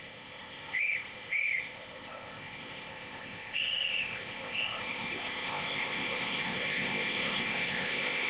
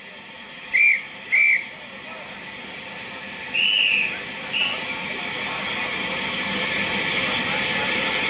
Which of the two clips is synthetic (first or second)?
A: first